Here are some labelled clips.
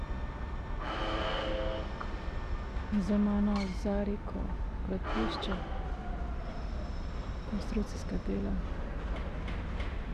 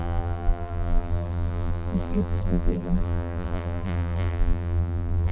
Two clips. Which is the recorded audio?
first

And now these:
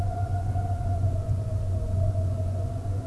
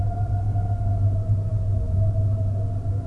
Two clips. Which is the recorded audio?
second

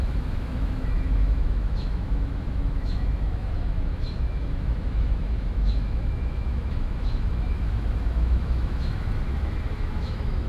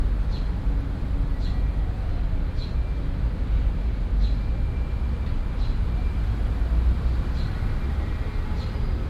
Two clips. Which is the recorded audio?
second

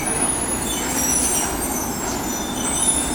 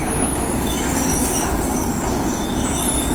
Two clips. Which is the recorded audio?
first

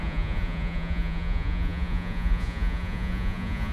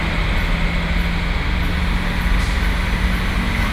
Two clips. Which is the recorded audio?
second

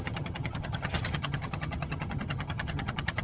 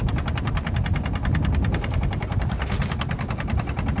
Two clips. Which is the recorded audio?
second